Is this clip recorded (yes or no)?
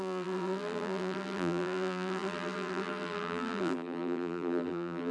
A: no